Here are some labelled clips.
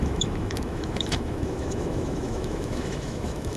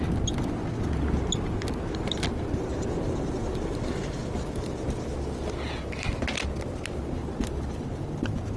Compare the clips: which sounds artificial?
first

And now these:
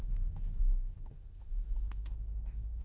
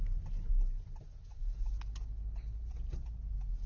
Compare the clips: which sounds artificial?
first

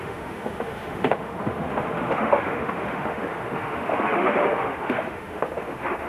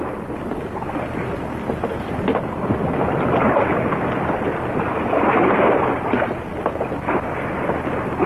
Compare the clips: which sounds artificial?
first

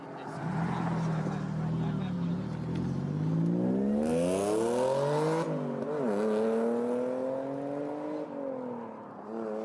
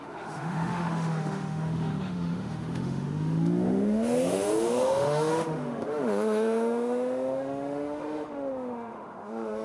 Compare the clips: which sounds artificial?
second